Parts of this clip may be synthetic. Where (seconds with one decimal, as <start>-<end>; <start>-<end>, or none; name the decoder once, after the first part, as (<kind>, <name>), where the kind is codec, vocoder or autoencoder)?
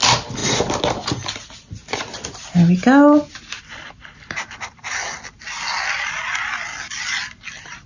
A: none